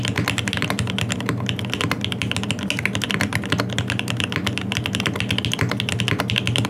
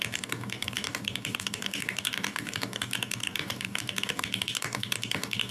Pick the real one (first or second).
first